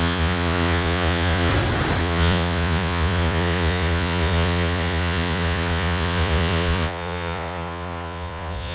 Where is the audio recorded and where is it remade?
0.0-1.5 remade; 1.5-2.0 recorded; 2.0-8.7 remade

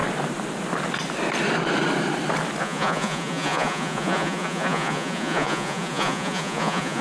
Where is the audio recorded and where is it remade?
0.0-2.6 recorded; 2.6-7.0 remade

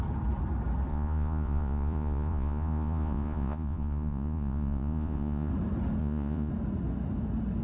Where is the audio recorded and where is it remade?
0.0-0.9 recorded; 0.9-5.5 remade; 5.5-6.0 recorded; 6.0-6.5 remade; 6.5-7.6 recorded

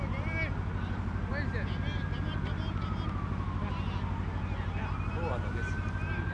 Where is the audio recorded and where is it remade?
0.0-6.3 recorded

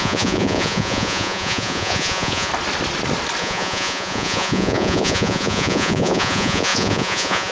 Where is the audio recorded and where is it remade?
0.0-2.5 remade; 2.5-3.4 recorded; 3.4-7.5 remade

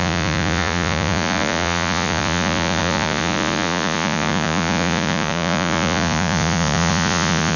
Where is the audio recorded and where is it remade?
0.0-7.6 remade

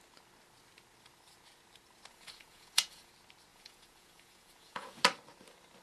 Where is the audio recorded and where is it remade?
0.0-2.1 recorded; 2.1-3.1 remade; 3.1-3.5 recorded; 3.5-5.0 remade; 5.0-5.8 recorded